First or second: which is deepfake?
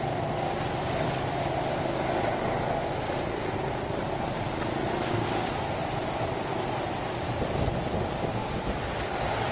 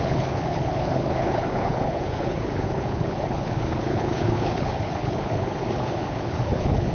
second